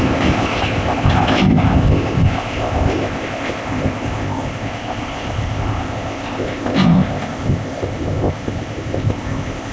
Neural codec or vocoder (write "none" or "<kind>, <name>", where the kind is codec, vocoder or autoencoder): codec, ZipCodec